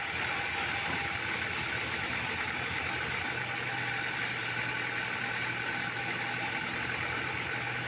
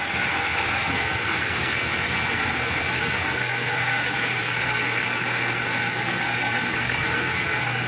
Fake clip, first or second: second